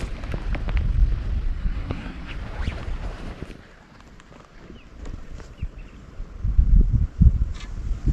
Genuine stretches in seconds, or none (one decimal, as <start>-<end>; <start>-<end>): 0.0-1.5; 2.3-8.1